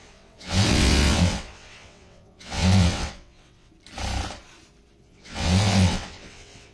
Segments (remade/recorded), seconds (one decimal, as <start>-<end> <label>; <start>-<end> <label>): 0.0-3.7 remade; 3.7-5.0 recorded; 5.0-6.7 remade

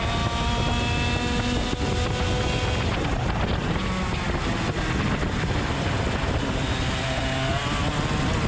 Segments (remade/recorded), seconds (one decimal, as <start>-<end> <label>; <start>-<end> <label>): 0.0-8.5 recorded

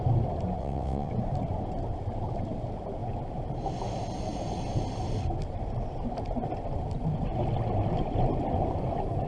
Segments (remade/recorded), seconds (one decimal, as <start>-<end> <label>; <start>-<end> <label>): 0.0-0.6 recorded; 0.6-1.1 remade; 1.1-9.3 recorded

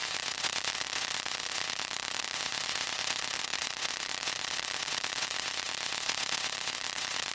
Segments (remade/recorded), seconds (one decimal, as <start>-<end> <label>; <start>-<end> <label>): 0.0-7.3 remade